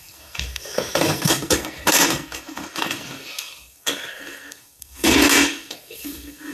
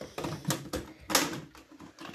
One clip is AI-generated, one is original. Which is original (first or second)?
second